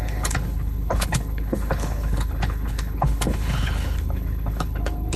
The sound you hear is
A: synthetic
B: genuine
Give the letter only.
A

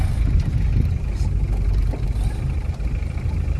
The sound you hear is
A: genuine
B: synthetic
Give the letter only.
A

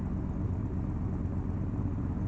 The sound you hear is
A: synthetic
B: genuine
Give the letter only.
B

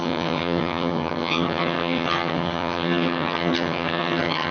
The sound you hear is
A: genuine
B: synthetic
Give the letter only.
B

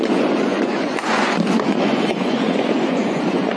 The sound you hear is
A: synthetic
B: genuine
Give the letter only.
A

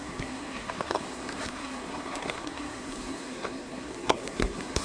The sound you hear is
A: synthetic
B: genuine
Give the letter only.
A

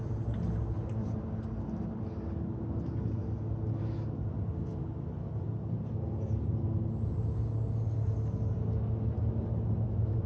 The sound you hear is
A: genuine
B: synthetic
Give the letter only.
A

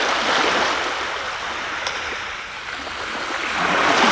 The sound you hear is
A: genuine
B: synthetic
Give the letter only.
A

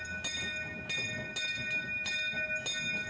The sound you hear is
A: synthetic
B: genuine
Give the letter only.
B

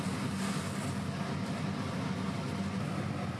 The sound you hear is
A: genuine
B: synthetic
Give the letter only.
A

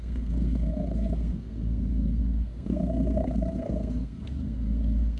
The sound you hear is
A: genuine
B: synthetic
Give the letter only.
B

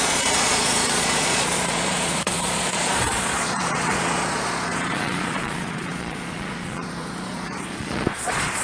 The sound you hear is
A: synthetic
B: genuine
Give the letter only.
A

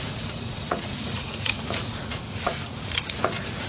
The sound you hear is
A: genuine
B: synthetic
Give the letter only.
B